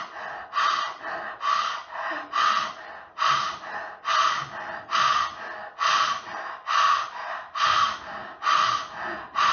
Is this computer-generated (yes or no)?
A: no